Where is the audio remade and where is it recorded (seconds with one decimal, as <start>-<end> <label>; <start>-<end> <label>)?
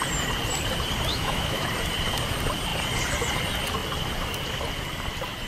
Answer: 0.0-1.1 recorded; 1.1-1.7 remade; 1.7-5.5 recorded